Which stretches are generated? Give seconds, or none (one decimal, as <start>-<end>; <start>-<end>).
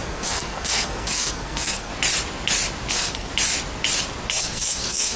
0.0-1.9; 2.9-3.3; 4.4-5.2